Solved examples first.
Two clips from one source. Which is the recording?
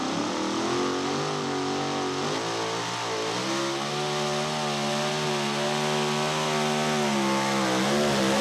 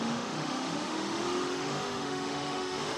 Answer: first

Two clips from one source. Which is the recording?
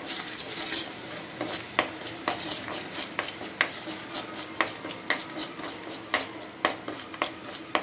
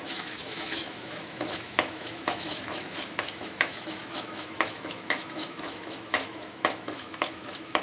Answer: first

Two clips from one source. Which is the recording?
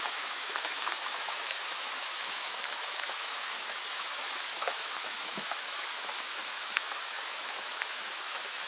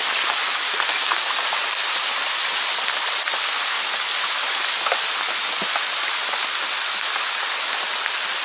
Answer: second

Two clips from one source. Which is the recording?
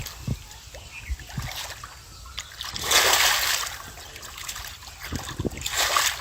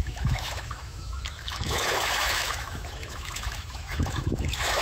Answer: first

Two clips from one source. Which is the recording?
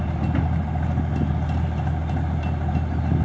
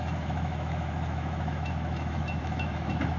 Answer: first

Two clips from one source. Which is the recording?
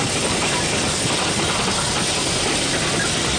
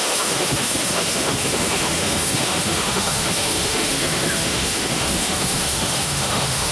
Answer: first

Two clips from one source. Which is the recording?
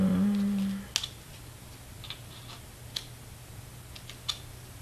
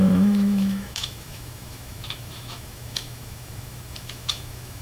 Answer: first